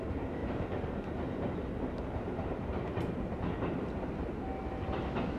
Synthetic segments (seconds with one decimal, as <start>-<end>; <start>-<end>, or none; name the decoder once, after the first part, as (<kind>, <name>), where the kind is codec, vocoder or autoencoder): 0.4-3.5 (vocoder, BigVGAN v2)